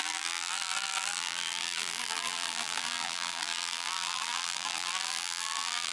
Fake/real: fake